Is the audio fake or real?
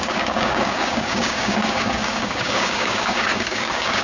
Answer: fake